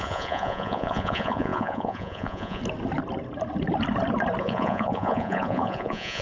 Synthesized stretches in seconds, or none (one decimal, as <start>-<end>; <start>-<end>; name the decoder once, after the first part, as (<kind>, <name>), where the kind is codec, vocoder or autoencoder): 0.0-2.6 (vocoder, Vocos); 4.4-6.2